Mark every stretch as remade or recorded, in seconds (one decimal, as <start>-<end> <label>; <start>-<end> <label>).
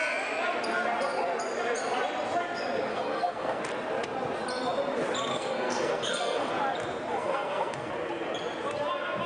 0.0-2.9 recorded; 2.9-3.6 remade; 3.6-5.3 recorded; 5.3-6.5 remade; 6.5-7.1 recorded; 7.1-7.9 remade; 7.9-9.3 recorded